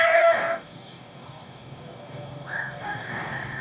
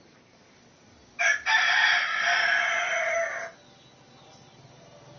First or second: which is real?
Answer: second